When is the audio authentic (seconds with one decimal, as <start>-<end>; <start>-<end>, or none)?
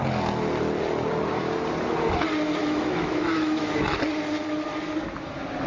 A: 0.0-2.6; 4.0-5.7